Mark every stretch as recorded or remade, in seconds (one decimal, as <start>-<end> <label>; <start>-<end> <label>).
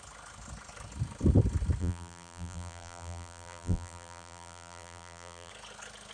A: 0.0-1.8 recorded; 1.8-5.5 remade; 5.5-6.1 recorded